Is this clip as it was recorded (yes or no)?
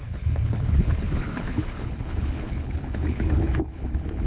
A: no